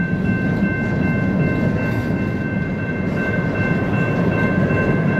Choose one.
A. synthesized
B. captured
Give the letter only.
B